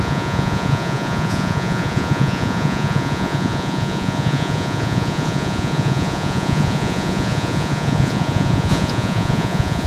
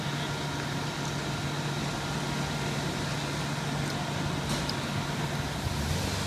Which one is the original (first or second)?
second